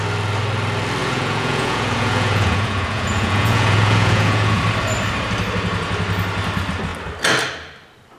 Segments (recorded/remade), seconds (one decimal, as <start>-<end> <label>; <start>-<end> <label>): 0.0-1.0 recorded; 1.0-4.6 remade; 4.6-8.2 recorded